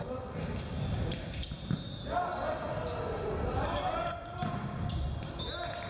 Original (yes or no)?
yes